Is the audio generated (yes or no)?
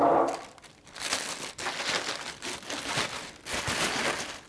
no